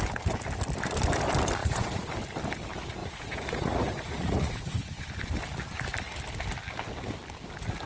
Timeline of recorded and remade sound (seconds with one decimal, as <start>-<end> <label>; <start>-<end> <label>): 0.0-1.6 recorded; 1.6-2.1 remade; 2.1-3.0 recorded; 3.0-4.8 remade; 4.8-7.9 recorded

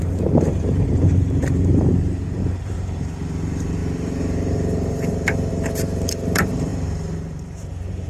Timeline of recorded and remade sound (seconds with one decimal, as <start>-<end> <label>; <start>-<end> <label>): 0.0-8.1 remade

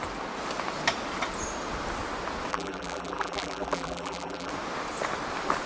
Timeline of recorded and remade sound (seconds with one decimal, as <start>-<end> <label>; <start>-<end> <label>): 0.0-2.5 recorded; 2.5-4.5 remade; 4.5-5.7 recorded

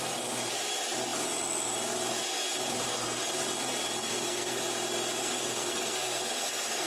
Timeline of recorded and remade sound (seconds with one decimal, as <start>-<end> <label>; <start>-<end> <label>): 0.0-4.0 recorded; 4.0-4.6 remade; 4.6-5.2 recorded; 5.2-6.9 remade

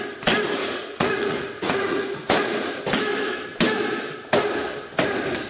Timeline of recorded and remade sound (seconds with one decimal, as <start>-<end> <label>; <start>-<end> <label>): 0.0-0.6 recorded; 0.6-2.8 remade; 2.8-5.5 recorded